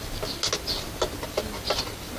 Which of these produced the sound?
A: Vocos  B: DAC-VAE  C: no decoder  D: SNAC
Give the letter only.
C